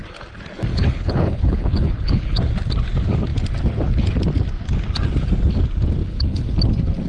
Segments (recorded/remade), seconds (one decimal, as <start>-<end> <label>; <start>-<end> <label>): 0.0-0.7 recorded; 0.7-2.4 remade; 2.4-6.0 recorded; 6.0-6.5 remade; 6.5-7.1 recorded

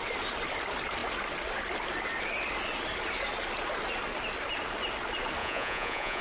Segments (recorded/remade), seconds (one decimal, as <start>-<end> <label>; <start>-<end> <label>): 0.0-5.4 recorded; 5.4-6.2 remade

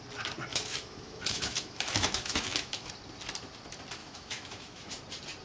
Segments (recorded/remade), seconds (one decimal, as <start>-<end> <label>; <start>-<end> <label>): 0.0-0.5 recorded; 0.5-2.9 remade; 2.9-4.0 recorded; 4.0-4.9 remade; 4.9-5.4 recorded

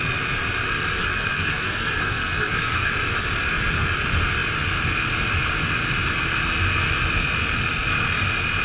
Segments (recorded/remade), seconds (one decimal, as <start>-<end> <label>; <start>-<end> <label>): 0.0-1.0 recorded; 1.0-2.9 remade; 2.9-8.6 recorded